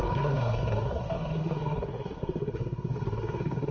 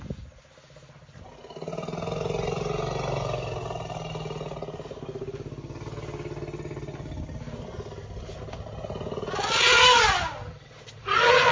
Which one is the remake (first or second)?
first